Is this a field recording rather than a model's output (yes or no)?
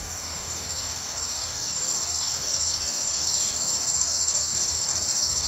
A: no